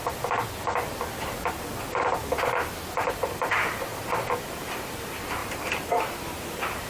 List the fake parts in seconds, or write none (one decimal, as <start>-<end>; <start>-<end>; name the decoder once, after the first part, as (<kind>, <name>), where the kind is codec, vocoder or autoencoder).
3.1-3.9 (vocoder, BigVGAN v2); 4.4-5.4; 6.4-6.9